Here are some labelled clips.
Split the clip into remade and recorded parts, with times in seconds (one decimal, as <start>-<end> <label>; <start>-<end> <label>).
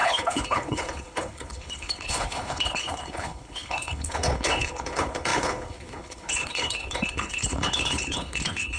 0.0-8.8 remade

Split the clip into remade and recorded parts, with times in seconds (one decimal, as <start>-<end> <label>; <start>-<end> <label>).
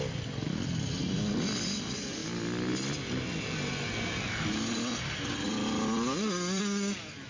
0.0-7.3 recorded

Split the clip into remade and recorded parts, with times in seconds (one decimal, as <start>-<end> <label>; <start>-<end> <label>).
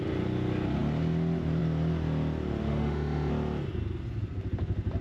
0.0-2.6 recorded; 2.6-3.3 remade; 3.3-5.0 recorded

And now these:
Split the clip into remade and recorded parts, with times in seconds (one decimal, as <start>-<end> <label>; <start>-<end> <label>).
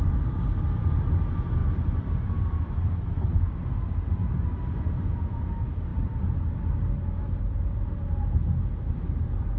0.0-9.6 recorded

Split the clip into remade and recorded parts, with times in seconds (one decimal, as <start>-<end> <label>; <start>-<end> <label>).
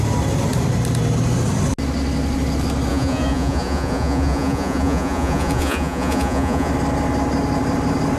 0.0-2.9 recorded; 2.9-6.7 remade; 6.7-8.2 recorded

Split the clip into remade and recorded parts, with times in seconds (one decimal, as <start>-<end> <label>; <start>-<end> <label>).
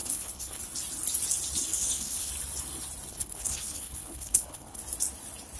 0.0-0.6 remade; 0.6-1.7 recorded; 1.7-2.3 remade; 2.3-3.1 recorded; 3.1-4.8 remade; 4.8-5.6 recorded